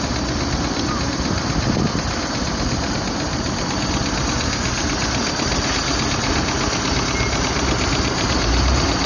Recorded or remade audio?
recorded